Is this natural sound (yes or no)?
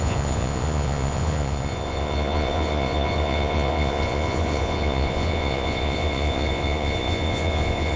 no